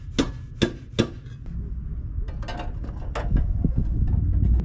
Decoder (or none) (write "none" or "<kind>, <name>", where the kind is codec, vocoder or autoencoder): none